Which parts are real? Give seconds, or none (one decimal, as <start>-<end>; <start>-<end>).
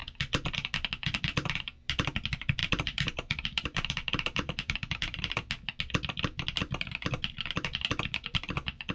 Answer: 0.0-2.6; 5.3-8.9